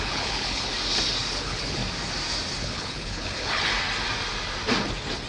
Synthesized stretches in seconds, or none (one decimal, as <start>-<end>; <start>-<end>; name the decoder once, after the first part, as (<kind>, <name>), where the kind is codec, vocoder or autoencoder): 0.0-0.7 (codec, HILCodec); 1.4-1.8; 2.6-3.7